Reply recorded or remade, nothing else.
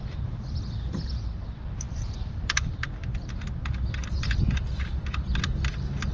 recorded